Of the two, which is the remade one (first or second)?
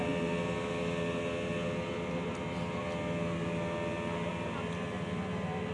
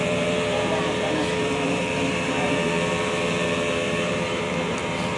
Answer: second